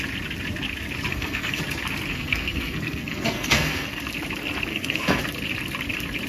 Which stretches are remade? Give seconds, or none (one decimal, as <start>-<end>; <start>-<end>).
1.1-1.6; 2.1-4.0; 4.7-5.2